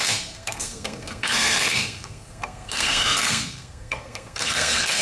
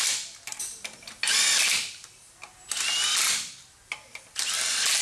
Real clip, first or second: second